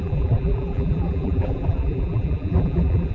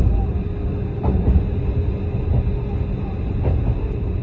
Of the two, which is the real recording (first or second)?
second